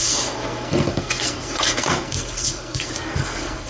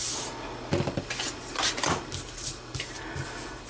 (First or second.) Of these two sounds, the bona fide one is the second